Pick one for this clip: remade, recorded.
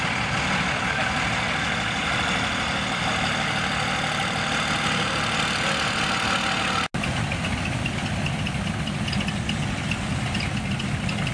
recorded